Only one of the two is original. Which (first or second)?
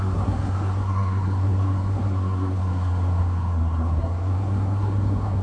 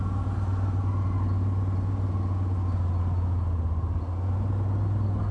second